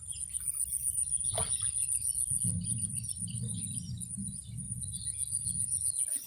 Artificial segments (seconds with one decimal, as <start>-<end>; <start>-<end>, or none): none